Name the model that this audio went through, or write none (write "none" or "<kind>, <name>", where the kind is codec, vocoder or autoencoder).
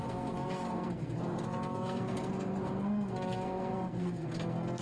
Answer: codec, SNAC